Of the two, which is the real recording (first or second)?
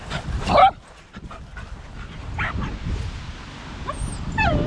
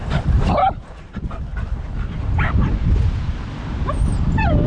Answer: first